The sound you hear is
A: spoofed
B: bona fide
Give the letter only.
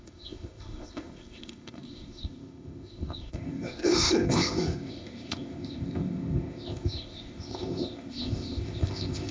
A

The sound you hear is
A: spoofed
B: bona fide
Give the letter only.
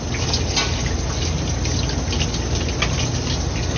B